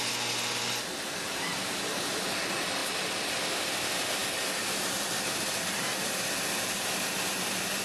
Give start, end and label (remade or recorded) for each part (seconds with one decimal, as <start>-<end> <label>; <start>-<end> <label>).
0.0-7.8 recorded